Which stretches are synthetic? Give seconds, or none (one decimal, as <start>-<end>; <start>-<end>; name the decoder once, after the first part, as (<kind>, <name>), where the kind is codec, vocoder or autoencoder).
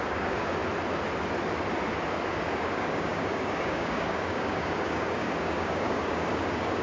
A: 0.0-0.6 (codec, DAC); 2.3-6.8